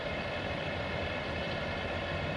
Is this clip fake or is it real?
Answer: fake